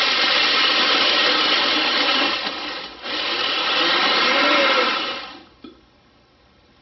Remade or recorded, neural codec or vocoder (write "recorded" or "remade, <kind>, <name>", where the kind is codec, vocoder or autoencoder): recorded